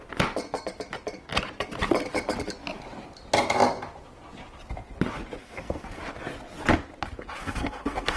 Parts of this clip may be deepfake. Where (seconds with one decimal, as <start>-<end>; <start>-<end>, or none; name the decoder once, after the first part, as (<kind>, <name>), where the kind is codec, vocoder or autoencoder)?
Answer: 5.4-6.0 (codec, SNAC); 7.4-8.2